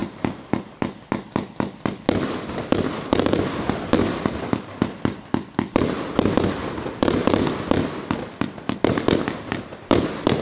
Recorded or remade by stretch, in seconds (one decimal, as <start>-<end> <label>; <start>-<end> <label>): 0.0-10.4 recorded

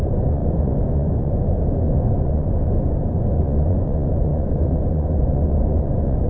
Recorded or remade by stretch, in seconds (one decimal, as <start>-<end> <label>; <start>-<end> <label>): 0.0-6.3 remade

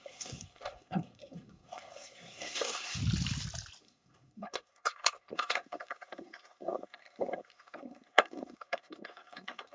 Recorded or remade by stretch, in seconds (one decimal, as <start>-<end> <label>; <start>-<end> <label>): 0.0-3.0 remade; 3.0-3.8 recorded; 3.8-9.7 remade